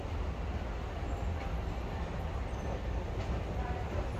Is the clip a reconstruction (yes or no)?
no